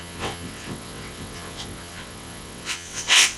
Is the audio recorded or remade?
remade